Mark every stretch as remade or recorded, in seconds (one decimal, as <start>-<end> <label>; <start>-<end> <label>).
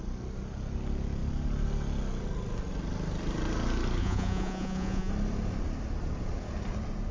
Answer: 0.0-4.0 recorded; 4.0-5.1 remade; 5.1-7.1 recorded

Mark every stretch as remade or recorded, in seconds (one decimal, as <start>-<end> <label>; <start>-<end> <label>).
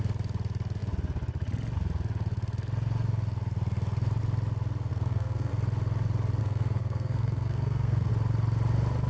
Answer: 0.0-4.9 recorded; 4.9-5.5 remade; 5.5-6.4 recorded; 6.4-8.1 remade; 8.1-9.1 recorded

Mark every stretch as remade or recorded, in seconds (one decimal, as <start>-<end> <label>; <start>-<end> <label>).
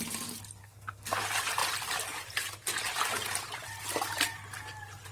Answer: 0.0-0.6 recorded; 0.6-1.2 remade; 1.2-5.1 recorded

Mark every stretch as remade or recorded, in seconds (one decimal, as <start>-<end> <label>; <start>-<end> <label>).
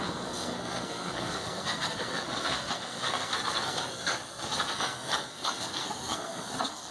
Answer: 0.0-6.9 remade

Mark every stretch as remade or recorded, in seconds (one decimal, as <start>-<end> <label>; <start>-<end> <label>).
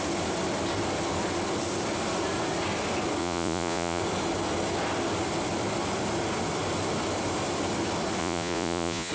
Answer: 0.0-3.2 recorded; 3.2-4.0 remade; 4.0-8.2 recorded; 8.2-9.1 remade